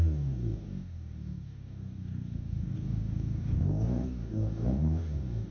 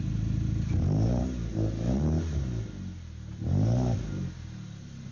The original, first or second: second